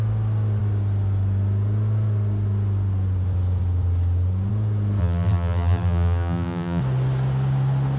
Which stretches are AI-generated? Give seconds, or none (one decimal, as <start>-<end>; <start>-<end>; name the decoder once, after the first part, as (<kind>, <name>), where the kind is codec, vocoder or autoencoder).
5.0-6.8 (vocoder, BigVGAN v2)